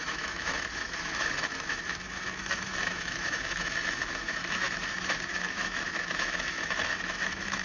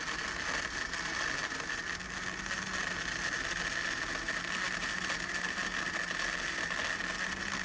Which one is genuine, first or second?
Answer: second